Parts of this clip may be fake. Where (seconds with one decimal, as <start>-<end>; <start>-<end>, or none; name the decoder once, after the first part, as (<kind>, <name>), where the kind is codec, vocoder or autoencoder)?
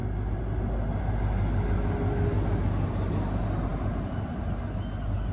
none